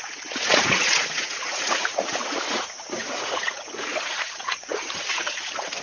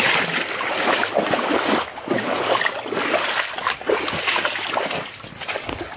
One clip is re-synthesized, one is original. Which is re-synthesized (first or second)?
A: first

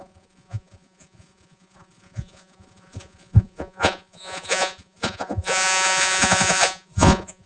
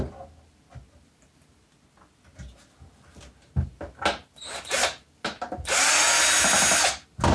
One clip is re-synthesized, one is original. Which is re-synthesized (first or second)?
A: first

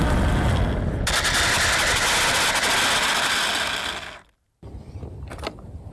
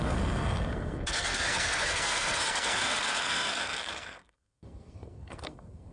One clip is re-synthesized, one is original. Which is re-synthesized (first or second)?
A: second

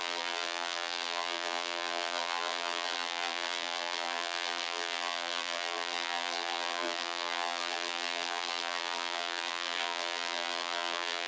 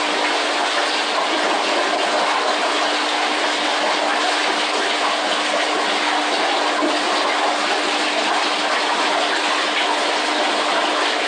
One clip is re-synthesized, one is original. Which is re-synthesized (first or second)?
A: first